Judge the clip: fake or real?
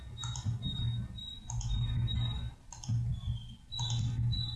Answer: real